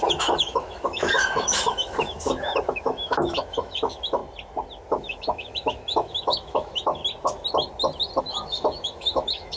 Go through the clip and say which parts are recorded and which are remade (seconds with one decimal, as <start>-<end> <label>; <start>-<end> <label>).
0.0-4.2 remade; 4.2-4.9 recorded; 4.9-7.0 remade; 7.0-8.2 recorded; 8.2-9.6 remade